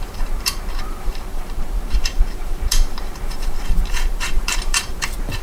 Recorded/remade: remade